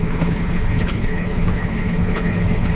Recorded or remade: remade